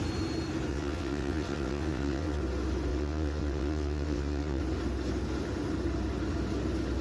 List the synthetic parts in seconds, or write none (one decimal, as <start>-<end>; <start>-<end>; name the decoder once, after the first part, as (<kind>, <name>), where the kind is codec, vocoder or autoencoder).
0.7-2.4 (vocoder, WaveNeXt); 2.9-4.6

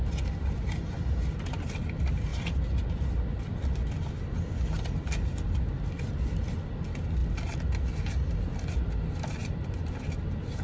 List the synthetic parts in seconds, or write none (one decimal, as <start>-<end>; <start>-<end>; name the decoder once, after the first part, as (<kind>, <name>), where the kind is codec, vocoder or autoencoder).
none

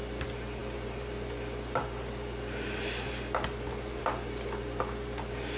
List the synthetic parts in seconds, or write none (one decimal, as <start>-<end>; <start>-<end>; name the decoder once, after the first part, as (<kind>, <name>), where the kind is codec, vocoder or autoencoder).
none

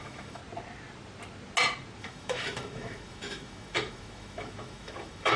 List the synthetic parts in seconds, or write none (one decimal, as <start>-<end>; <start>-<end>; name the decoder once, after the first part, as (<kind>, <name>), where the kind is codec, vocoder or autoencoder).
0.0-0.4 (autoencoder, DAC-VAE); 2.0-5.4